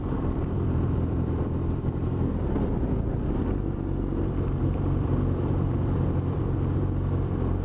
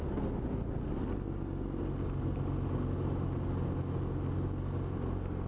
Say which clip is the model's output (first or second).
first